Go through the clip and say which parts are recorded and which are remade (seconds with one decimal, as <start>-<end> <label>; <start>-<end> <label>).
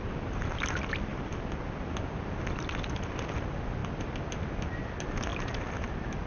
0.0-6.3 recorded